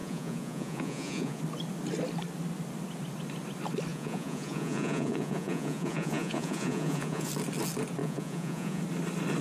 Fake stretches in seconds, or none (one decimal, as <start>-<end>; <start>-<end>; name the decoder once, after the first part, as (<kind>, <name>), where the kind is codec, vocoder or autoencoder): 0.0-1.4 (vocoder, Vocos); 3.9-7.3; 8.0-8.8